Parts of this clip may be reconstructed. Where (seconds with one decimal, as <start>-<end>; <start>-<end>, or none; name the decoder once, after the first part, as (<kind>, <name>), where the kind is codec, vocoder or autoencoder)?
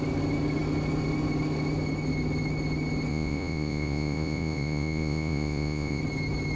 3.1-6.0 (vocoder, Vocos)